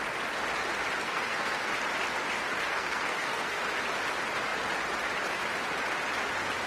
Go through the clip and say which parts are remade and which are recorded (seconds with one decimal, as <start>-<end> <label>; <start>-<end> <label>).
0.0-1.0 recorded; 1.0-1.7 remade; 1.7-2.6 recorded; 2.6-3.6 remade; 3.6-6.7 recorded